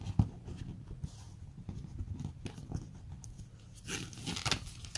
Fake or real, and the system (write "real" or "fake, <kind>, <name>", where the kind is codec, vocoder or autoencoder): real